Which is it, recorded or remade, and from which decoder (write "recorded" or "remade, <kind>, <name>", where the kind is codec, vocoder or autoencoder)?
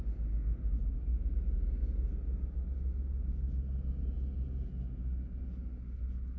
recorded